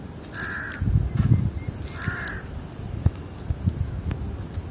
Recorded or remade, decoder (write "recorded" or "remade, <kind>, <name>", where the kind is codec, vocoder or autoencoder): recorded